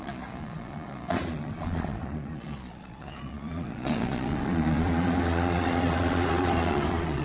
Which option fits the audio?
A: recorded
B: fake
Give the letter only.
B